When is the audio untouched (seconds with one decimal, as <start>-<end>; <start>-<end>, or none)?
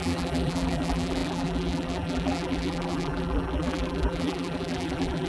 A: none